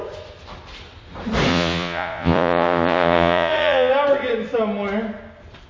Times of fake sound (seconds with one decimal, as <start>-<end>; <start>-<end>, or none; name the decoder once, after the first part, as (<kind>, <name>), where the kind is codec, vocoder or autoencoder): 1.5-3.9 (vocoder, Vocos)